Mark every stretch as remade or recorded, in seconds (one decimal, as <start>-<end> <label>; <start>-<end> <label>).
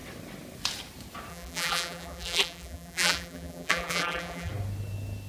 0.0-1.3 recorded; 1.3-4.5 remade; 4.5-5.3 recorded